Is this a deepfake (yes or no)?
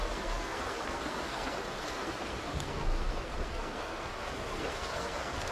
yes